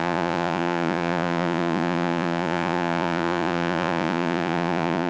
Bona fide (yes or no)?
no